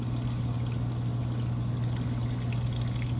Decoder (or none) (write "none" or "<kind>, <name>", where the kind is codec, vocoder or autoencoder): none